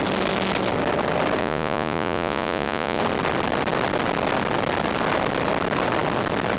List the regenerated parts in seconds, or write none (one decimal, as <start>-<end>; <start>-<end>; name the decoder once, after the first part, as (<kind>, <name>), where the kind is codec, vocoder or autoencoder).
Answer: 1.4-3.0 (vocoder, Vocos)